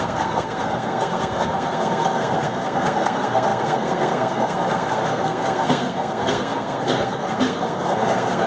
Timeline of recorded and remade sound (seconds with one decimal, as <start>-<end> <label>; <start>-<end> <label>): 0.0-8.5 remade